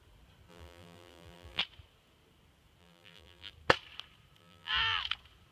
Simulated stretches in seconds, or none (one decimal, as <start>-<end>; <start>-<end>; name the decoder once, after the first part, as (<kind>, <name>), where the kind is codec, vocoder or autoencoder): 0.5-1.6 (vocoder, BigVGAN v2); 2.8-3.5; 4.4-5.0